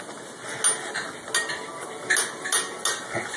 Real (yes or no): yes